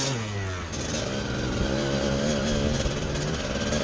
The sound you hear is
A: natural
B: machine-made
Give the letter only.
A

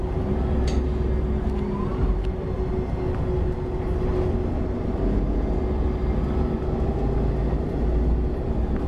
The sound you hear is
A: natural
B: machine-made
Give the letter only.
A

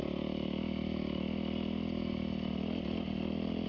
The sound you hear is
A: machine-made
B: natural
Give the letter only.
B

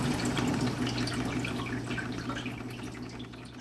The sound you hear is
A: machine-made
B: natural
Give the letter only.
B